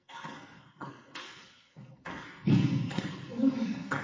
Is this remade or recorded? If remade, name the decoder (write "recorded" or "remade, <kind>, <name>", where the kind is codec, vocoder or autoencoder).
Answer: remade, codec, SNAC